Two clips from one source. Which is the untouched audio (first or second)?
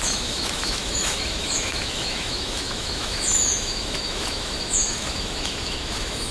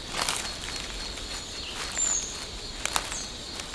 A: second